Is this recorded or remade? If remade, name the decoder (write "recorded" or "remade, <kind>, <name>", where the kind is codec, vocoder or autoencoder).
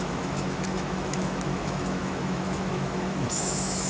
remade, autoencoder, DAC-VAE